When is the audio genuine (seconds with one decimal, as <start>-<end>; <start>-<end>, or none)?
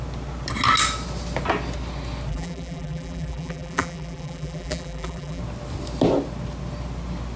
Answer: 0.0-2.3; 5.4-7.4